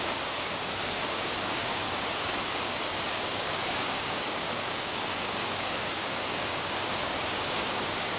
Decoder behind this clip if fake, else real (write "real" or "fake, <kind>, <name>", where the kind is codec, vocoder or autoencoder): fake, codec, DAC